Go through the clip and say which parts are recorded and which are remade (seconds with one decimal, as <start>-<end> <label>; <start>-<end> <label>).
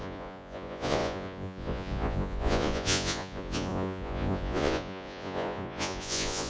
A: 0.0-6.5 remade